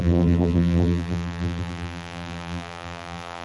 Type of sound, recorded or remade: remade